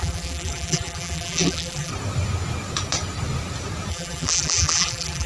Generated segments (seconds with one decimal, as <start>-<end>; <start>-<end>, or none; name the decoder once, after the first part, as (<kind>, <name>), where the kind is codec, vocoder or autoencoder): 0.0-1.9 (vocoder, BigVGAN v2); 3.9-5.3

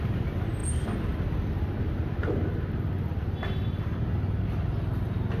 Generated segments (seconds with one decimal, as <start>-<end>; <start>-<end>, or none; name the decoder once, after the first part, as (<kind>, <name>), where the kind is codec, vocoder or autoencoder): none